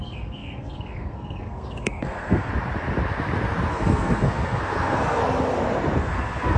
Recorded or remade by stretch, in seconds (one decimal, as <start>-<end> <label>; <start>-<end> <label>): 0.0-2.5 remade; 2.5-3.7 recorded; 3.7-5.2 remade; 5.2-6.0 recorded; 6.0-6.6 remade